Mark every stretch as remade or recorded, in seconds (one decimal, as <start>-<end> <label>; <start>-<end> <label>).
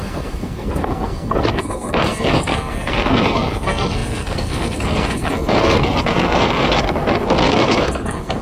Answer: 0.0-8.4 remade